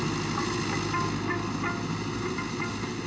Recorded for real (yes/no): yes